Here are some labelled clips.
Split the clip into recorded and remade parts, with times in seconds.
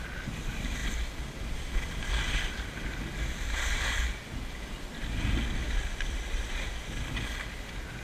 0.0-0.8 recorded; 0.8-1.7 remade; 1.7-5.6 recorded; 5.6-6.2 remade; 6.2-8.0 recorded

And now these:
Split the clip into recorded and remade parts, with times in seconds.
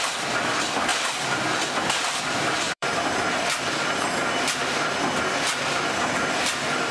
0.0-0.9 recorded; 0.9-3.6 remade; 3.6-6.9 recorded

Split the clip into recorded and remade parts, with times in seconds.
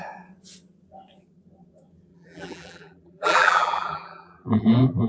0.0-2.1 recorded; 2.1-5.1 remade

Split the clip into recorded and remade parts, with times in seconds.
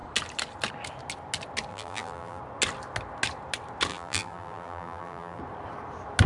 0.0-1.7 recorded; 1.7-2.4 remade; 2.4-3.9 recorded; 3.9-5.4 remade; 5.4-6.3 recorded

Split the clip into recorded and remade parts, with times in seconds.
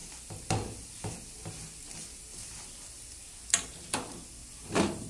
0.0-5.1 recorded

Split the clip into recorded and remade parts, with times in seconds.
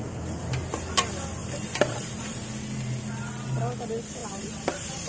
0.0-1.4 recorded; 1.4-2.5 remade; 2.5-4.2 recorded; 4.2-5.1 remade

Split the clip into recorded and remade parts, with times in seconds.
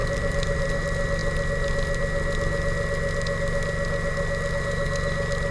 0.0-0.7 remade; 0.7-5.5 recorded